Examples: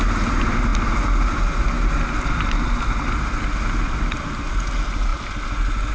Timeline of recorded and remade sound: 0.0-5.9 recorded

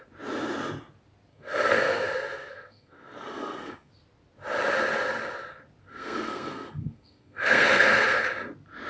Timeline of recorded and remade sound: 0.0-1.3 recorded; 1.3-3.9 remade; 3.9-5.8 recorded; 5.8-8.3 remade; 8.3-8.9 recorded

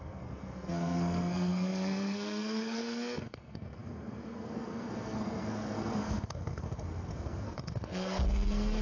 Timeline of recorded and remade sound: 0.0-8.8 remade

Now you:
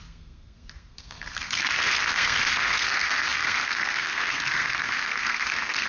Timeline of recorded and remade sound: 0.0-5.9 remade

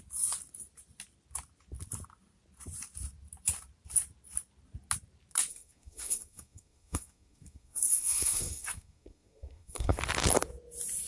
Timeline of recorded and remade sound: 0.0-5.5 recorded; 5.5-10.0 remade; 10.0-11.1 recorded